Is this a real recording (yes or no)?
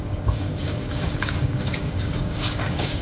no